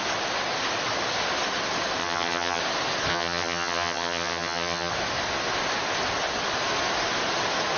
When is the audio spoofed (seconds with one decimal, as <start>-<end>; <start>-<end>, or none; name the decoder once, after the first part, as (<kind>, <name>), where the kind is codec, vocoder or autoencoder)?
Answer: 2.0-2.6 (vocoder, HiFi-GAN); 3.1-4.9